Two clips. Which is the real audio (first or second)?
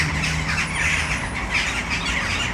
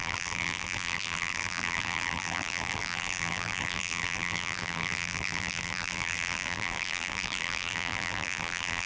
first